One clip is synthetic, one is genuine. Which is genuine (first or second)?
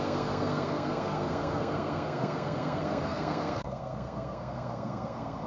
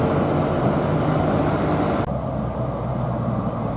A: second